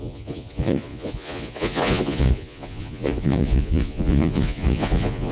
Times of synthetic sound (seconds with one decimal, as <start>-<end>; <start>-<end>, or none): 0.0-5.3